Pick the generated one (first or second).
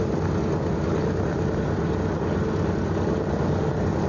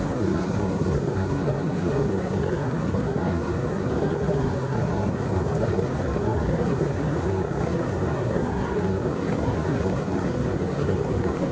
second